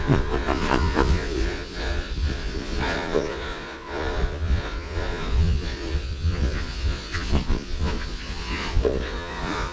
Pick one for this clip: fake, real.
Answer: fake